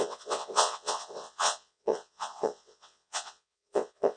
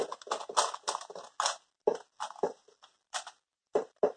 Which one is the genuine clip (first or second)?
second